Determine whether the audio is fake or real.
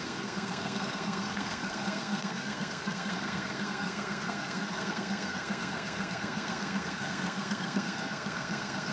fake